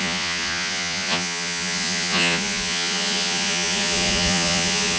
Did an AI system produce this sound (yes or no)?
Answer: yes